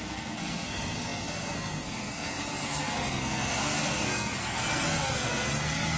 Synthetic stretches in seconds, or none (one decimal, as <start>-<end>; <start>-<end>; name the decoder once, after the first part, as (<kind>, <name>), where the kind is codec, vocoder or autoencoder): 0.0-6.0 (codec, SNAC)